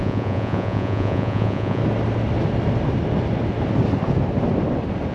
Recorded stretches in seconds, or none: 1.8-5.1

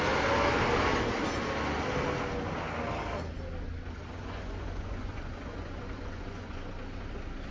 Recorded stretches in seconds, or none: 0.0-4.2; 6.7-7.5

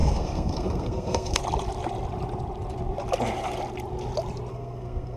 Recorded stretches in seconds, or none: 1.4-4.5

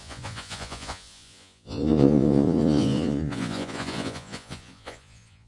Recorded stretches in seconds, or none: none